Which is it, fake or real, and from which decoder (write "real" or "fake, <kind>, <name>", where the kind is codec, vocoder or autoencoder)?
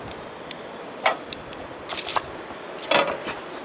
real